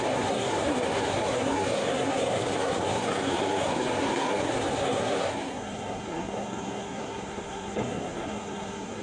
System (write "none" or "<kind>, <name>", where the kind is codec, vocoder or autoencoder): codec, SNAC